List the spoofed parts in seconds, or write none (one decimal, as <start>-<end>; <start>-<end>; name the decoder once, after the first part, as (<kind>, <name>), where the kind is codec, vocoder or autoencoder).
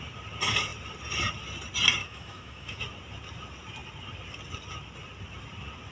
2.0-2.8 (autoencoder, DAC-VAE)